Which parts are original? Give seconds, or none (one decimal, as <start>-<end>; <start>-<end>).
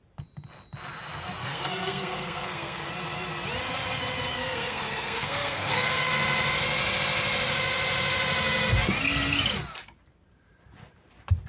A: 0.0-1.4; 2.9-4.3; 6.1-11.5